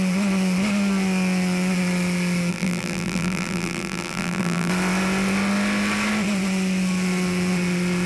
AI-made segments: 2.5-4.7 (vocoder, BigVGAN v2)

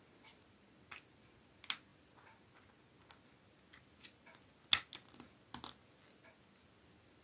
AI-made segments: none

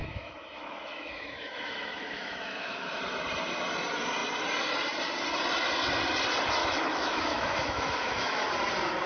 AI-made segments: 0.0-3.0 (autoencoder, DAC-VAE); 6.6-8.5

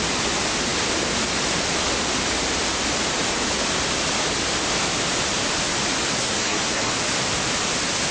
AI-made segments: 6.2-6.9 (codec, SNAC)

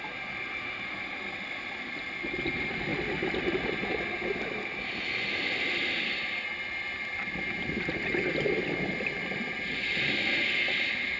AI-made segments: none

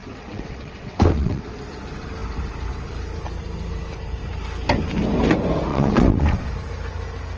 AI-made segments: 0.0-1.4 (vocoder, WaveNeXt); 5.7-6.5